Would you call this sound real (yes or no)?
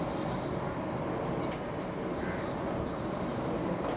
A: yes